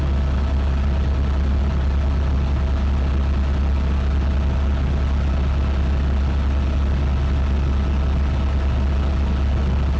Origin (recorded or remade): recorded